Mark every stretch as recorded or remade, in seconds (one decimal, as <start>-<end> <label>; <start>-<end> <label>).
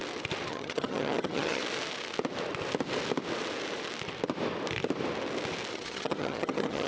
0.0-0.5 recorded; 0.5-1.6 remade; 1.6-5.7 recorded; 5.7-6.9 remade